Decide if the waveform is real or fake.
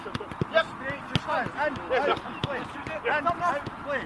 real